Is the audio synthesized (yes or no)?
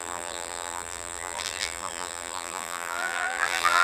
yes